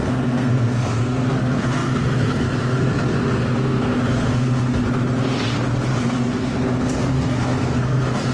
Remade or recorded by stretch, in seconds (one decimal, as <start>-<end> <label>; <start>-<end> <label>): 0.0-4.8 remade; 4.8-6.0 recorded; 6.0-8.3 remade